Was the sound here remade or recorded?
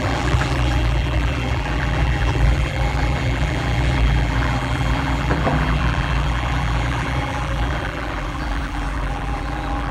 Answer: remade